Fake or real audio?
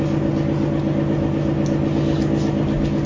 real